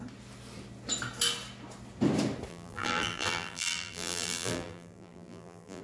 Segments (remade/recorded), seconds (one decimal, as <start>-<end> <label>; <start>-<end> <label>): 0.0-2.5 recorded; 2.5-5.8 remade